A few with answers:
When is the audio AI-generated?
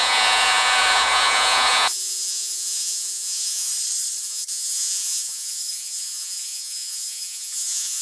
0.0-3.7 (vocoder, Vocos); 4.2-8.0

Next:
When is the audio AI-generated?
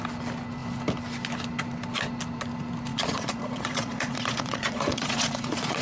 2.9-5.8 (vocoder, Vocos)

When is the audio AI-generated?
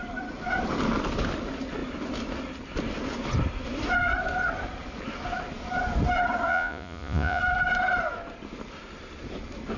6.5-7.4 (vocoder, Vocos)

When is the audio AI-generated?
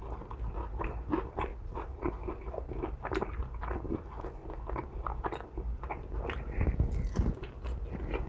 1.5-2.1 (vocoder, Vocos)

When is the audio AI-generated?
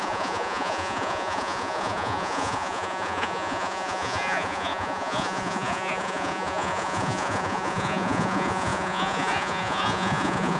0.0-10.6 (vocoder, Vocos)